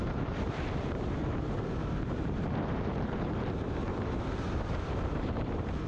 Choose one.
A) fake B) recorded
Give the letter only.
A